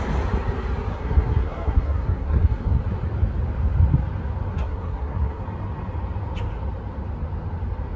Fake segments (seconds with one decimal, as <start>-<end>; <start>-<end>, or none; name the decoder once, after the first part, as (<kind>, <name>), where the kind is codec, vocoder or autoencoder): 0.9-2.8 (codec, SNAC); 4.5-5.4